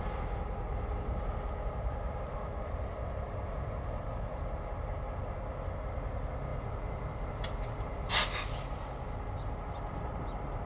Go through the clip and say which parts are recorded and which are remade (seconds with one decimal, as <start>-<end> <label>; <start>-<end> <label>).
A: 0.0-6.5 recorded; 6.5-8.1 remade; 8.1-10.7 recorded